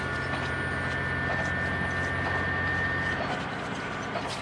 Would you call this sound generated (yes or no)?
no